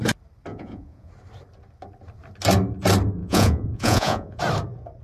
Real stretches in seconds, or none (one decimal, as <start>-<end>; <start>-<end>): 0.0-0.5; 1.1-3.2; 4.4-5.0